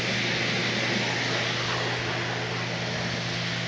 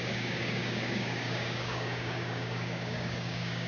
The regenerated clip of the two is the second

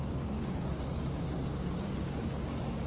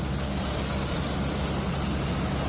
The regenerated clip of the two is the first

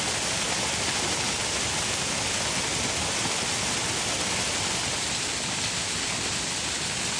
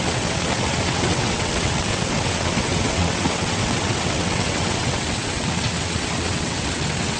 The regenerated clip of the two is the second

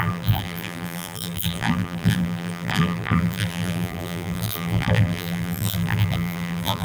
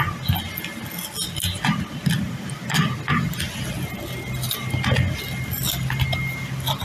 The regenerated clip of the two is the first